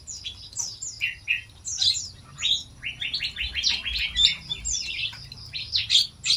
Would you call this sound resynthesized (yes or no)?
no